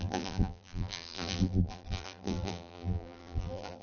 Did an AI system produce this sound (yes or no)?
yes